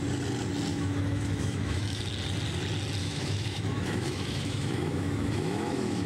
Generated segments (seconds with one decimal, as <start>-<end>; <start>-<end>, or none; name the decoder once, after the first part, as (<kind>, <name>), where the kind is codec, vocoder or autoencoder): 0.7-2.0 (autoencoder, DAC-VAE); 3.0-6.1